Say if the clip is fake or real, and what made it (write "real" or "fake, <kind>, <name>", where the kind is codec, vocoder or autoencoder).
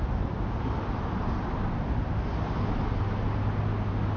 real